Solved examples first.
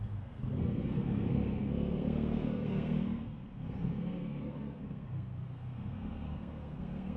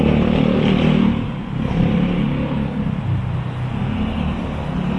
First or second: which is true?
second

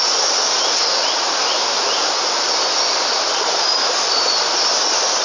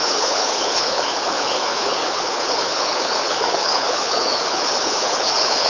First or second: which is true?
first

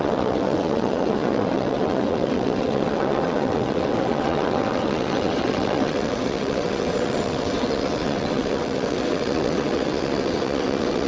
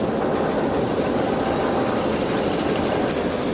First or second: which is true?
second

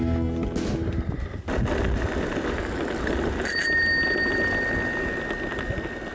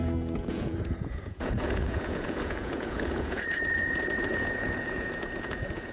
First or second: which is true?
first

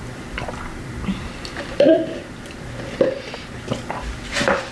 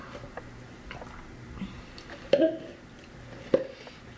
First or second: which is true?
second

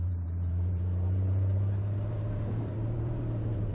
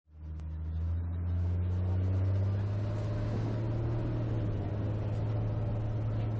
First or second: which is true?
second